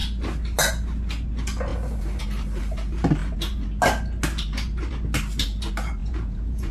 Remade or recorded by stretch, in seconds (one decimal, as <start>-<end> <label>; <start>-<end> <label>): 0.0-6.0 recorded; 6.0-6.7 remade